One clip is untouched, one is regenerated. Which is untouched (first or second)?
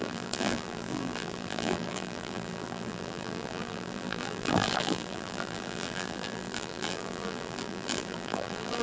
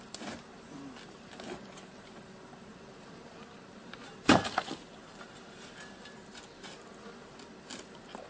second